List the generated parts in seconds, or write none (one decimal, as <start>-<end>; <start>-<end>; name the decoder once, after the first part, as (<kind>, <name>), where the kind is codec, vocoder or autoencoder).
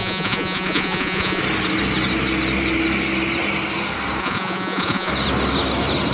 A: 0.0-1.4 (vocoder, Vocos); 4.2-5.1